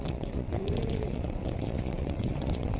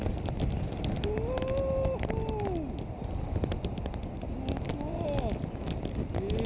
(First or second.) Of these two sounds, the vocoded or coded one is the first